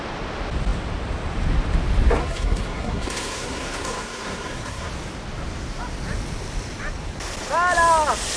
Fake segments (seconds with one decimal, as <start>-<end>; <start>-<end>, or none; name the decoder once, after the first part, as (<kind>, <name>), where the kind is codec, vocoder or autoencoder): 2.2-4.9 (codec, SNAC)